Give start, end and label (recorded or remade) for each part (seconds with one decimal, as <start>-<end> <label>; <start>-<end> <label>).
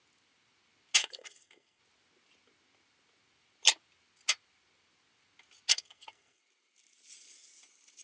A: 0.0-1.0 recorded; 1.0-1.8 remade; 1.8-5.7 recorded; 5.7-6.4 remade; 6.4-8.0 recorded